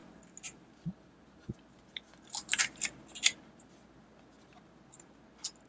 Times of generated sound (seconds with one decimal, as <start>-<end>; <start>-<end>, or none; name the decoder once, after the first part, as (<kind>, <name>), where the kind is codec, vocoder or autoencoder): none